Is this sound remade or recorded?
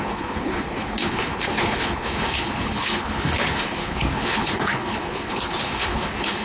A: remade